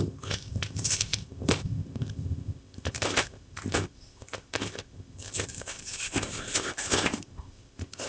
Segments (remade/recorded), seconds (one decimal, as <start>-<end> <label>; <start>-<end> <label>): 0.0-8.1 remade